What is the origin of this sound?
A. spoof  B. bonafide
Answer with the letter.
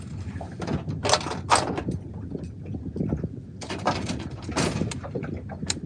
B